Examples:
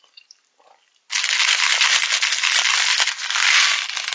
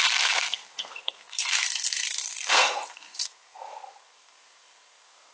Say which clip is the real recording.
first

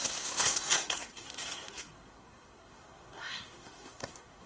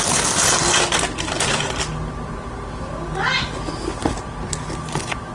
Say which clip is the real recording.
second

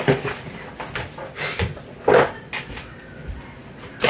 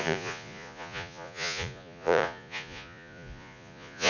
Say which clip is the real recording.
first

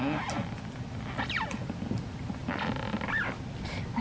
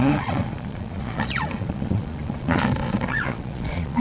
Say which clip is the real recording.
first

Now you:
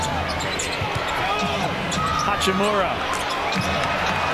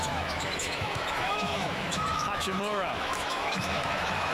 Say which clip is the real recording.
first